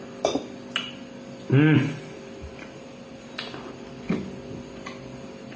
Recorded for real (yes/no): yes